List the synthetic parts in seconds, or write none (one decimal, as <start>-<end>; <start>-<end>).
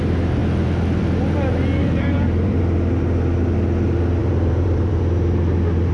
1.8-2.6; 4.2-5.0